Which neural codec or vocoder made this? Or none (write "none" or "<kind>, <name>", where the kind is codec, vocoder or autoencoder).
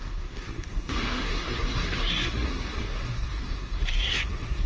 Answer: codec, SNAC